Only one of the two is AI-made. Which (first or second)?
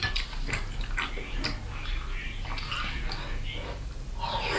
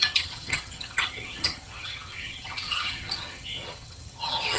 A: second